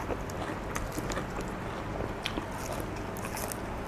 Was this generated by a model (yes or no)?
no